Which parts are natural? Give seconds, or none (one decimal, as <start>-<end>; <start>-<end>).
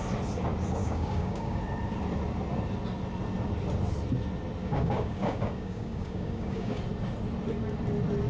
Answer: 0.0-0.8; 1.6-4.6; 6.8-8.3